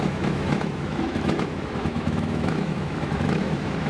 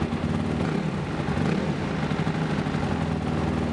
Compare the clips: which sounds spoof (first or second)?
first